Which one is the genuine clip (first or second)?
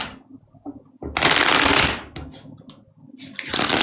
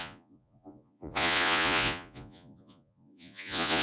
first